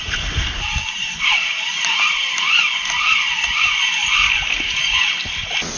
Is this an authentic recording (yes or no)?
yes